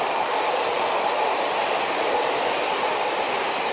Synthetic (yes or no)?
yes